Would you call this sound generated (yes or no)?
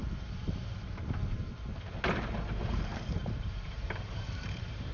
yes